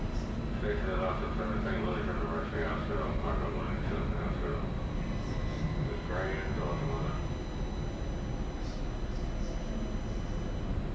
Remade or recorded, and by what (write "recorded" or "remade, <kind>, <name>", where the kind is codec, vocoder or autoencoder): recorded